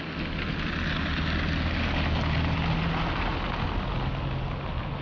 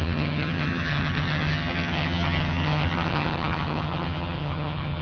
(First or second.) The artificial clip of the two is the second